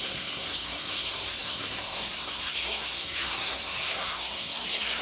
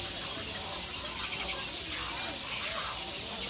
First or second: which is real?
second